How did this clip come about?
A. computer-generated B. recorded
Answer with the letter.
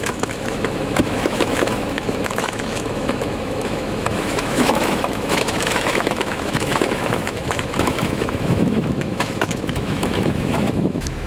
A